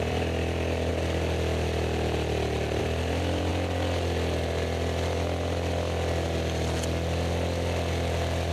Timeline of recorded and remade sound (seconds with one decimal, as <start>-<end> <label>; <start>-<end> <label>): 0.0-0.9 remade; 0.9-2.8 recorded; 2.8-3.5 remade; 3.5-8.5 recorded